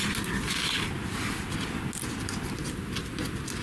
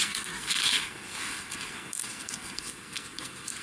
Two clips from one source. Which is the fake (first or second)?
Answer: second